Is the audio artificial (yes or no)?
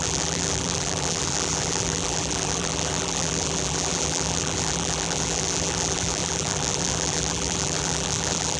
yes